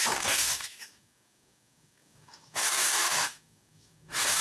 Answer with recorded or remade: remade